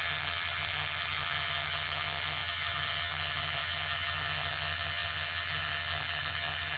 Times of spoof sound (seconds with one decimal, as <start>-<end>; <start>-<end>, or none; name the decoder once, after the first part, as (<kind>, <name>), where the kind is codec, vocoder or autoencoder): 0.0-6.8 (vocoder, HiFi-GAN)